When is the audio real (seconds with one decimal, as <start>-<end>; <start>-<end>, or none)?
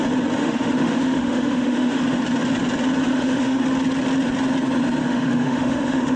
0.0-0.4; 2.0-3.1; 3.6-5.0